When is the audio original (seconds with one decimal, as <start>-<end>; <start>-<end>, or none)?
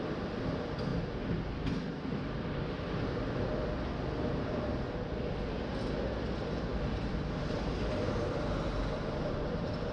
0.0-9.9